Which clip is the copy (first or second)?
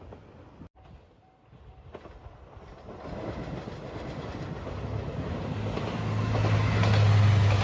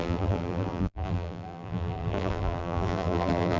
second